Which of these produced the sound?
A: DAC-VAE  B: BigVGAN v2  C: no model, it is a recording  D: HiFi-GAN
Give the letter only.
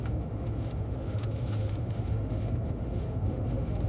A